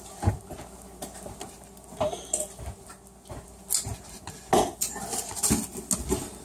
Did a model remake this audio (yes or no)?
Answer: no